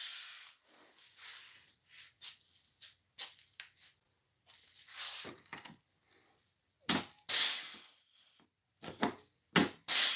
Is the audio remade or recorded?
recorded